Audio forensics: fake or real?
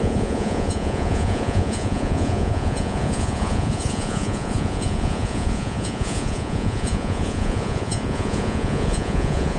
fake